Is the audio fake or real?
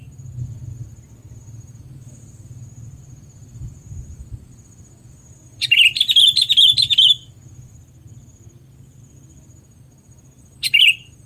fake